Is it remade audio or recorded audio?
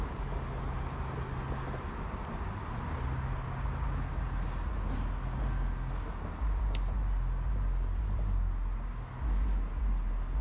recorded